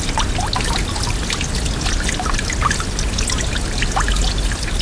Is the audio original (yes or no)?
yes